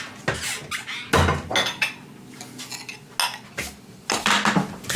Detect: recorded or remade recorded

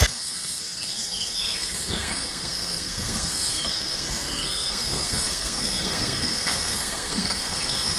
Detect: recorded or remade remade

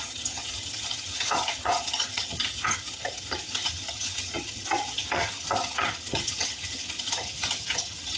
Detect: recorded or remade remade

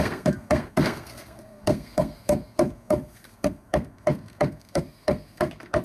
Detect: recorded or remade remade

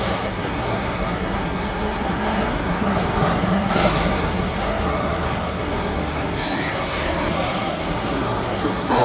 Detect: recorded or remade remade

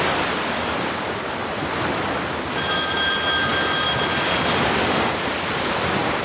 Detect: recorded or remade recorded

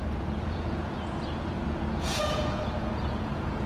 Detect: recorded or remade remade